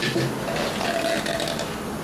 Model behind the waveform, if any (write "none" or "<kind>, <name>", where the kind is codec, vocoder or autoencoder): none